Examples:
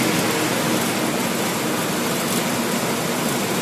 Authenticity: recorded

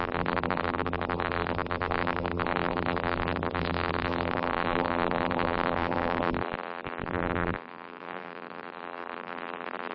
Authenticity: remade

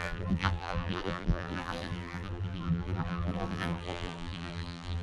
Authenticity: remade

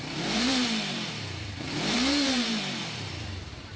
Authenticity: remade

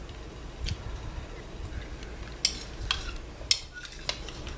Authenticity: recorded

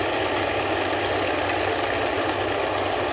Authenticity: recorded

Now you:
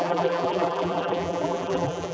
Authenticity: remade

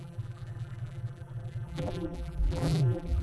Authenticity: remade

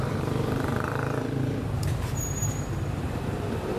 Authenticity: remade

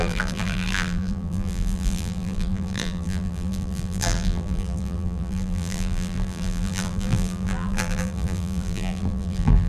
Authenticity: remade